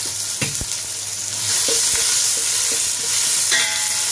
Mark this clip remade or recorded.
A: recorded